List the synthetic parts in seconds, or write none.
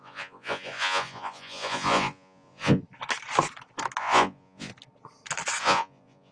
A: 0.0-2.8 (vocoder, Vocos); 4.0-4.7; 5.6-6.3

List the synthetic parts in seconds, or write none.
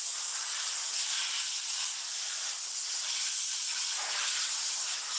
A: none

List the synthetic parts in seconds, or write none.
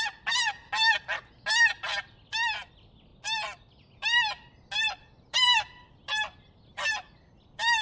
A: 5.0-5.7 (vocoder, BigVGAN v2)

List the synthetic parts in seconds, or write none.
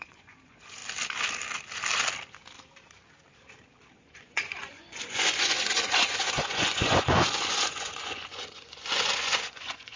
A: 0.0-0.8 (vocoder, Vocos); 3.9-10.0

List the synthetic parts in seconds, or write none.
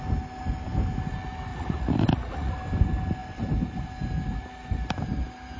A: 1.5-2.5 (vocoder, Vocos)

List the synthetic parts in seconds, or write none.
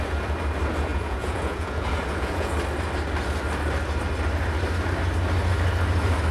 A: 0.9-2.5 (vocoder, Vocos)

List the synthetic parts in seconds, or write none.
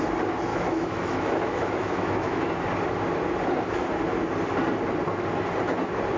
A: 0.5-2.5 (autoencoder, DAC-VAE)